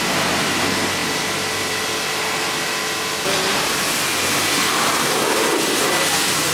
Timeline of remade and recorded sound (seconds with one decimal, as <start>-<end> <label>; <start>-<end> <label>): 0.0-6.5 recorded